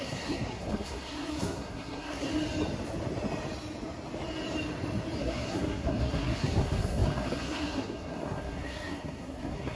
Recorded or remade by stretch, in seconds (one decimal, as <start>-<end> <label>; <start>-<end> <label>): 0.0-2.3 remade; 2.3-5.2 recorded; 5.2-9.8 remade